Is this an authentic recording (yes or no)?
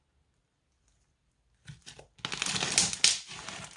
yes